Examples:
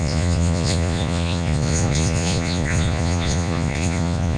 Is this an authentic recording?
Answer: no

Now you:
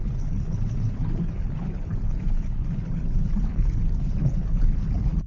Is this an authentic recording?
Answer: no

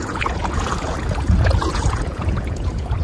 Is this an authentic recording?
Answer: no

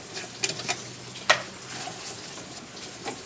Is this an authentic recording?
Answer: yes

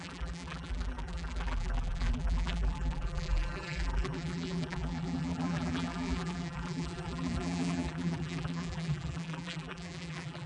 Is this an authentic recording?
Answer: no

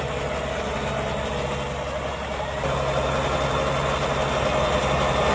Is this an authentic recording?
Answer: yes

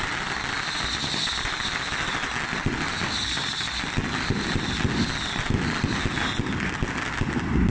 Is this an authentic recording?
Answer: yes